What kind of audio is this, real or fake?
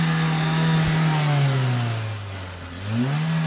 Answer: real